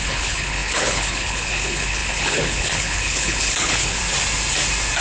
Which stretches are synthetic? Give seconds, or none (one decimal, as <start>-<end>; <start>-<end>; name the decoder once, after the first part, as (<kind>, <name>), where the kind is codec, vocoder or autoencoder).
0.0-4.0 (codec, HILCodec)